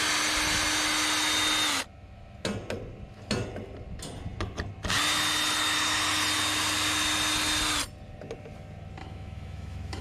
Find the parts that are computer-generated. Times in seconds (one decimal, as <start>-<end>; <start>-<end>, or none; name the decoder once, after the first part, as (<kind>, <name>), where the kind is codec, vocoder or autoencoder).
9.0-10.0 (autoencoder, DAC-VAE)